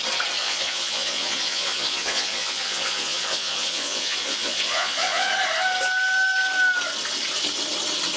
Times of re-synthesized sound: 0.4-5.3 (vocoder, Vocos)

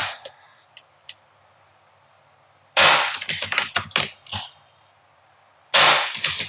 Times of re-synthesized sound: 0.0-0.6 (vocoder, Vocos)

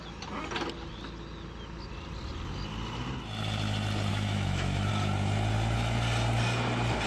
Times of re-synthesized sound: 4.1-4.9 (autoencoder, DAC-VAE)

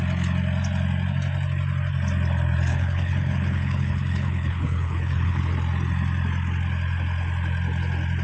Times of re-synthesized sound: 2.7-5.4 (codec, HILCodec)

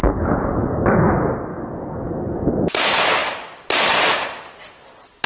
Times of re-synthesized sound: 0.0-1.1 (codec, DAC); 1.5-2.5

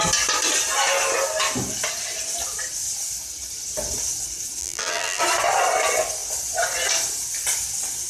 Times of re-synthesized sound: 4.6-5.2 (vocoder, BigVGAN v2)